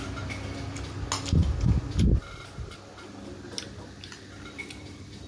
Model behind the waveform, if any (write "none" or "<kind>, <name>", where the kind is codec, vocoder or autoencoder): none